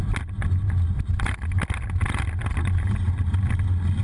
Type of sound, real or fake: real